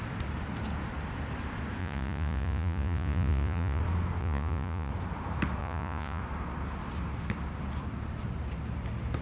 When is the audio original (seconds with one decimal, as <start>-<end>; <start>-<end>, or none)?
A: 0.0-1.8; 3.8-4.2; 4.9-5.6; 6.2-9.2